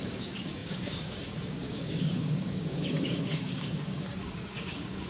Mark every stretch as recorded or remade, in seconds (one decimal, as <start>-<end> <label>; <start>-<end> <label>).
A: 0.0-5.1 remade